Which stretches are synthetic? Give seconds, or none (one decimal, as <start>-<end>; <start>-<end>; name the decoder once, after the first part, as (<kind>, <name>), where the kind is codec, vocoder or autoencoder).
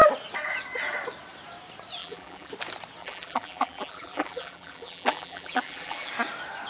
2.0-2.5 (vocoder, BigVGAN v2); 3.0-6.1